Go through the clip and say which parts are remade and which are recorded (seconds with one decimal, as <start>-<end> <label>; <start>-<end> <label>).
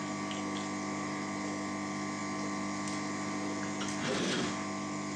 0.0-5.2 recorded